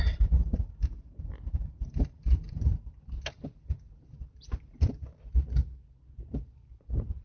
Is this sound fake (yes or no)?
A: no